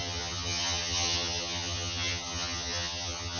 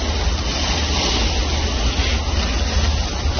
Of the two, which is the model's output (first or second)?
first